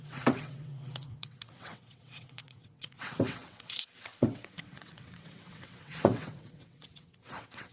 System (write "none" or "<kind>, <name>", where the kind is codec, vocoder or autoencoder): vocoder, WaveNeXt